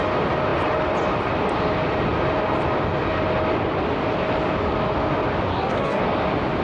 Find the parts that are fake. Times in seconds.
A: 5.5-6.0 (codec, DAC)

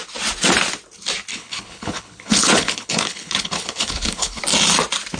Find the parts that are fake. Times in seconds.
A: 1.3-4.4 (codec, HILCodec)

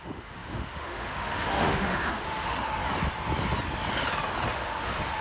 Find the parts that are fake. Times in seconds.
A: 0.0-2.8 (autoencoder, DAC-VAE); 4.5-5.2

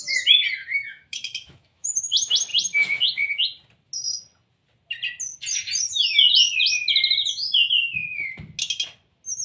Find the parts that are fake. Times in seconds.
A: 0.6-1.9 (autoencoder, DAC-VAE)